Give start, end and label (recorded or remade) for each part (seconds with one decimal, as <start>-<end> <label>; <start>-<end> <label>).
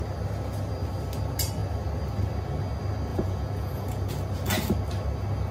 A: 0.0-3.1 recorded; 3.1-4.1 remade; 4.1-5.5 recorded